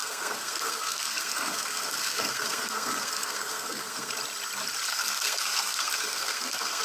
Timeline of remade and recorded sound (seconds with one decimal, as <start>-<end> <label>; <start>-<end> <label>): 0.0-4.1 remade; 4.1-4.9 recorded; 4.9-6.8 remade